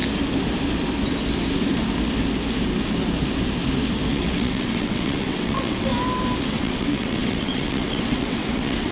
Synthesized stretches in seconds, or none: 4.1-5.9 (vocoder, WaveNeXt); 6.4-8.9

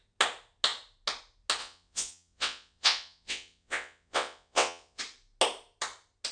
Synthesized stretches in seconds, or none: 1.6-5.0 (vocoder, WaveNeXt)

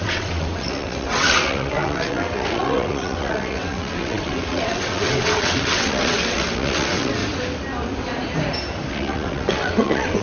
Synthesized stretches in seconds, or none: 0.0-7.2 (vocoder, WaveNeXt); 8.9-10.2

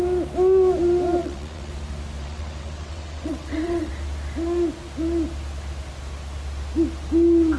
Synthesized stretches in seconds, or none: 1.2-1.7 (vocoder, WaveNeXt); 2.2-3.9

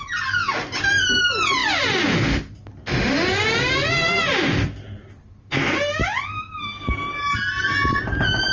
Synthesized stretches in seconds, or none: none

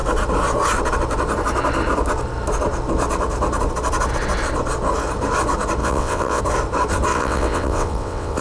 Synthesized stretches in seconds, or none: 5.8-6.4 (vocoder, WaveNeXt); 7.1-8.4

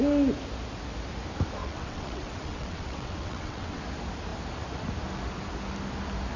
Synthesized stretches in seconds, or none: 1.6-3.8 (vocoder, WaveNeXt)

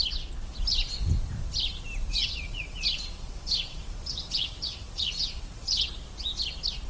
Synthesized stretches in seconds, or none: 2.1-5.9 (vocoder, WaveNeXt)